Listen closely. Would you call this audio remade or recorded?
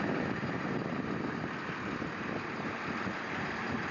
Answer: remade